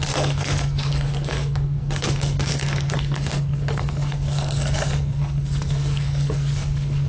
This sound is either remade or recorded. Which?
remade